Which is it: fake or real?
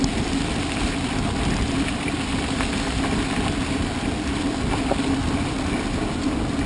real